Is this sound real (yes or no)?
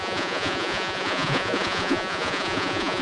no